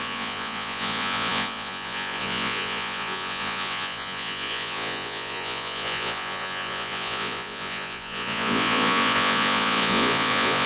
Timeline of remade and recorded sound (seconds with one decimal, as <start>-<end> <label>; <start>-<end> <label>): 0.0-10.7 remade